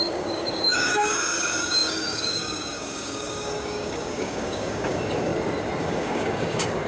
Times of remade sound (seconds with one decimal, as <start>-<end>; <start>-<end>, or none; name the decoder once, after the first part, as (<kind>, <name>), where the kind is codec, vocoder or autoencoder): 0.0-5.3 (codec, DAC); 5.8-6.9